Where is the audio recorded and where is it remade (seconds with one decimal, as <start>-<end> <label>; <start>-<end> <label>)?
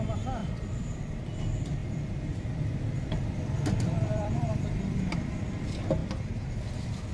0.0-0.4 recorded; 0.4-1.1 remade; 1.1-1.8 recorded; 1.8-4.8 remade; 4.8-7.1 recorded